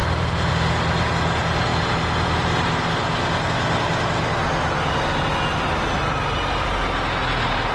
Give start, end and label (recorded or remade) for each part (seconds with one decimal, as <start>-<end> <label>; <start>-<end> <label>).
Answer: 0.0-0.5 remade; 0.5-7.7 recorded